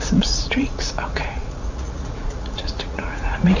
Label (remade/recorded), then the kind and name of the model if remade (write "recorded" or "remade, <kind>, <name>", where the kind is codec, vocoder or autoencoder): remade, vocoder, Vocos